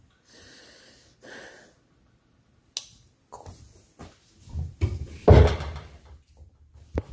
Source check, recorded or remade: recorded